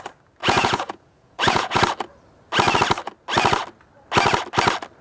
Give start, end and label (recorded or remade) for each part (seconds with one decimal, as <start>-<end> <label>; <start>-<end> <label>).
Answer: 0.0-0.4 recorded; 0.4-1.8 remade; 1.8-5.0 recorded